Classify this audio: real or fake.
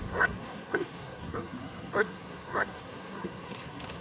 fake